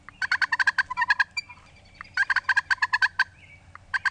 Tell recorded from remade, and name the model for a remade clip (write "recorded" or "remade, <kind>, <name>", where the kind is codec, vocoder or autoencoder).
recorded